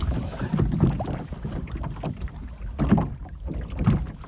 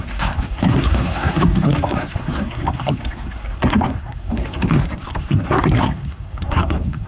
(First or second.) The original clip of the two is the first